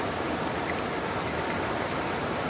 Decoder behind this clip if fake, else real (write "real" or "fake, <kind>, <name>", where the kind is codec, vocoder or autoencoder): real